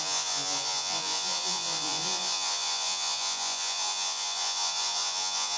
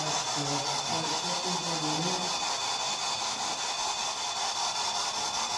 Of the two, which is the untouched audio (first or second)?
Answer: second